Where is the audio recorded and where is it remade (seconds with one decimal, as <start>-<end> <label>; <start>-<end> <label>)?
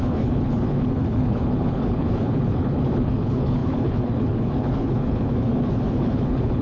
0.0-6.6 remade